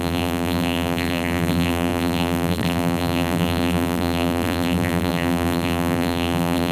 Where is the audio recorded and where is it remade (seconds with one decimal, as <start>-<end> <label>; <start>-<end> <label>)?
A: 0.0-6.7 remade